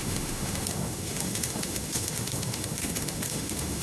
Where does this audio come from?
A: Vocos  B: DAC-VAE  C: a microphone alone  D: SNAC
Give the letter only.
B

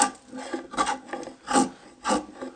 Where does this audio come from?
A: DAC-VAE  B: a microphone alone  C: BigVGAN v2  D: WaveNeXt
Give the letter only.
B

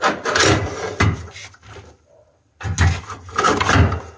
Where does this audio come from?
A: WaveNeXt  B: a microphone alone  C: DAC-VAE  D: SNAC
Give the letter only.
B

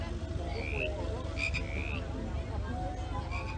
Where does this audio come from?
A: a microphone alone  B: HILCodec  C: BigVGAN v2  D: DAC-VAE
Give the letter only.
A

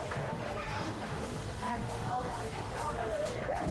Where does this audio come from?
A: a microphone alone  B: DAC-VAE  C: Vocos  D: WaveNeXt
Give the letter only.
B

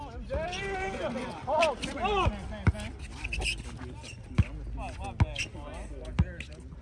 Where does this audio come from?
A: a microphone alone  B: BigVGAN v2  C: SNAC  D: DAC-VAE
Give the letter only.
A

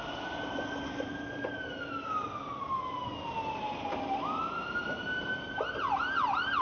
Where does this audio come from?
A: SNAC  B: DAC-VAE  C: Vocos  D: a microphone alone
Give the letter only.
D